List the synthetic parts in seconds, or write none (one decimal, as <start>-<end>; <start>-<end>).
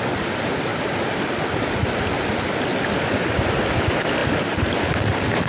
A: 0.7-2.0